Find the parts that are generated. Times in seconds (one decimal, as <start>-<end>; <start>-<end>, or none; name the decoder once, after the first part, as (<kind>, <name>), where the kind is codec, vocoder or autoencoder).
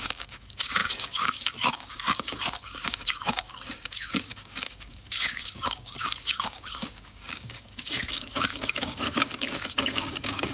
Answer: 0.0-10.5 (codec, DAC)